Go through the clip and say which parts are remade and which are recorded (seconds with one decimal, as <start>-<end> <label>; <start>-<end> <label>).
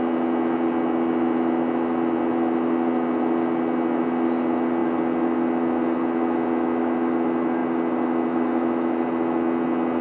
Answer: 0.0-10.0 recorded